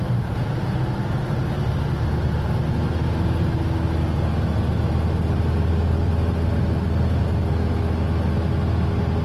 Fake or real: real